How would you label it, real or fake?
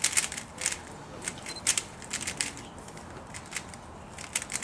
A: real